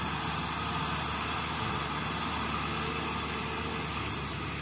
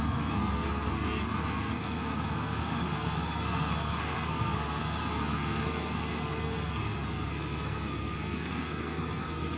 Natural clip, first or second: first